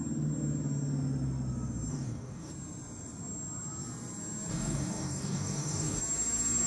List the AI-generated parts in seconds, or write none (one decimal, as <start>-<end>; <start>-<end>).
1.9-2.5; 4.5-6.0